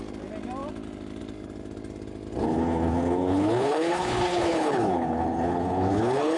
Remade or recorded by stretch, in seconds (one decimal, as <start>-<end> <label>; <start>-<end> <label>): 0.0-2.4 recorded; 2.4-6.4 remade

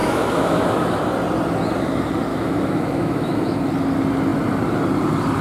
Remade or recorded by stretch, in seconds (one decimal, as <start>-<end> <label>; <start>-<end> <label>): 0.0-1.0 remade; 1.0-2.3 recorded; 2.3-3.6 remade; 3.6-5.4 recorded

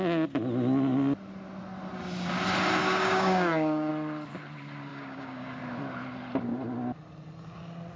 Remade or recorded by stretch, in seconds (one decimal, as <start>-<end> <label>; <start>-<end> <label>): 0.0-2.8 recorded; 2.8-3.9 remade; 3.9-4.9 recorded; 4.9-5.6 remade; 5.6-8.0 recorded

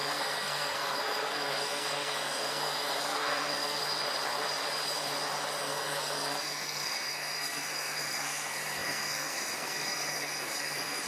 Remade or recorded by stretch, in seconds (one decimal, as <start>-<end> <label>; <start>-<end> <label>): 0.0-3.8 remade; 3.8-5.6 recorded; 5.6-11.1 remade

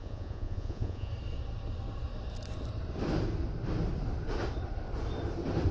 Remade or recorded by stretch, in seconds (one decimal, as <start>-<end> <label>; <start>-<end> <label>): 0.0-1.1 remade; 1.1-5.7 recorded

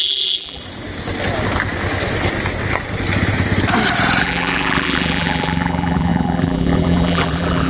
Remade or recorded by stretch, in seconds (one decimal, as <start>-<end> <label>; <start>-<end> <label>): 0.0-0.6 remade; 0.6-4.2 recorded; 4.2-7.7 remade